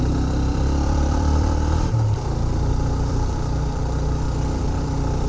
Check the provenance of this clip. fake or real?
fake